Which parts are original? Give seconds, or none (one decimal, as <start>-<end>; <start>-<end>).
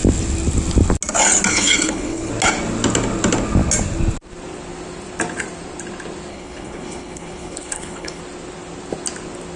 0.0-1.5; 2.3-6.3; 8.2-9.6